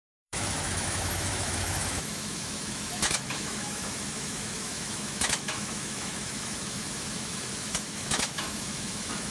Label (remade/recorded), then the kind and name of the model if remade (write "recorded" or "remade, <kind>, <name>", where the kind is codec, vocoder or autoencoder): remade, autoencoder, DAC-VAE